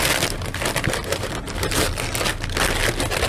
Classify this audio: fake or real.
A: real